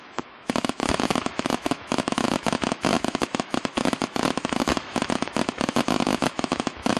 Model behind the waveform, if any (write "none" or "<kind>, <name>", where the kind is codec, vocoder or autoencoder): autoencoder, DAC-VAE